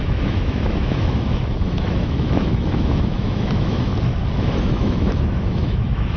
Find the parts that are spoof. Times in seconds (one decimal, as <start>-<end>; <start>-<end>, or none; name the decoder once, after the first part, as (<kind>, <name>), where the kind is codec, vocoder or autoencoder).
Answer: 0.0-3.9 (autoencoder, DAC-VAE); 4.4-6.2